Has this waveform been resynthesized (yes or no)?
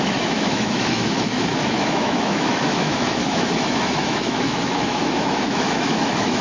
yes